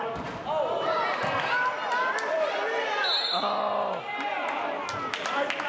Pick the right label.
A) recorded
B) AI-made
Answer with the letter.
A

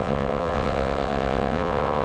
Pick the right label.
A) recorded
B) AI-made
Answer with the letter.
B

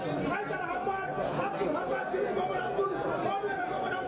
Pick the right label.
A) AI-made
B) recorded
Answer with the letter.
B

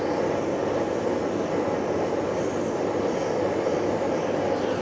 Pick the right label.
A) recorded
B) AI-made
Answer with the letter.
A